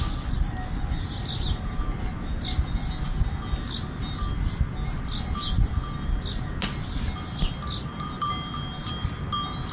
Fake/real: real